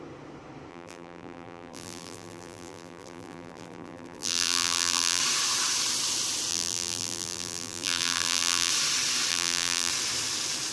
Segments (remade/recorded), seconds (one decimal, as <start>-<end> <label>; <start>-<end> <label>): 0.0-0.7 recorded; 0.7-5.2 remade; 5.2-6.5 recorded; 6.5-8.7 remade; 8.7-9.3 recorded; 9.3-9.9 remade; 9.9-10.7 recorded